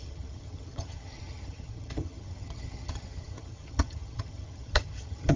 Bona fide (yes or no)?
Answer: no